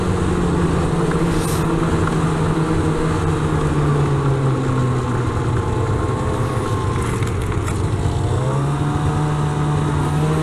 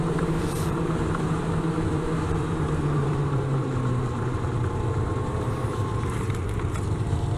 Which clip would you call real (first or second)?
first